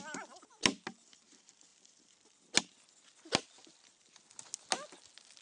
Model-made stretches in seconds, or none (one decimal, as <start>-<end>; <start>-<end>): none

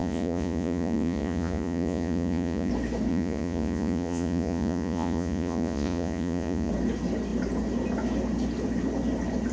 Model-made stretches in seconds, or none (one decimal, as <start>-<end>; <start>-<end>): 0.0-2.7; 3.1-6.7

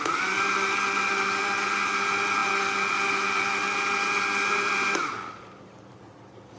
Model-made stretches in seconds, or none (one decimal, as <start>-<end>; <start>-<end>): none

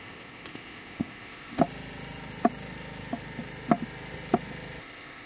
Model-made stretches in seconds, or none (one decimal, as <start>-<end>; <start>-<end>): 0.0-1.6; 4.8-5.3

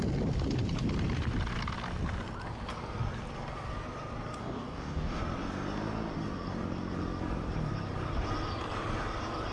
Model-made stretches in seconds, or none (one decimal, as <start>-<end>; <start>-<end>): 4.4-5.2

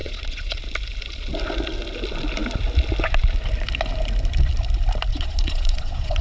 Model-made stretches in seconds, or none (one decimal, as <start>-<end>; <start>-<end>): 0.0-0.6; 5.1-6.2

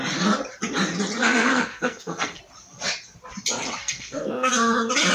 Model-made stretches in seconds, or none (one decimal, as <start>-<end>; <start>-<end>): 1.2-2.4; 3.8-4.5

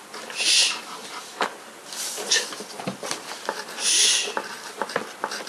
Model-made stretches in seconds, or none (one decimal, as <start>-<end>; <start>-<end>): none